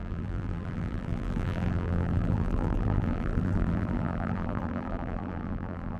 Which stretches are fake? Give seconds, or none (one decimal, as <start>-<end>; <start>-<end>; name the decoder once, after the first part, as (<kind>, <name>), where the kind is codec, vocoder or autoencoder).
0.0-6.0 (vocoder, BigVGAN v2)